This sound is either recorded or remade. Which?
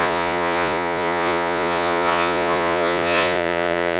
remade